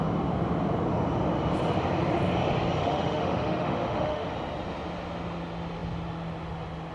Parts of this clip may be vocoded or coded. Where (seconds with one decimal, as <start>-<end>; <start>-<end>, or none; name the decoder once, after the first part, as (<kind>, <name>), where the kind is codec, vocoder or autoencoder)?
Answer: 2.8-4.3 (autoencoder, DAC-VAE)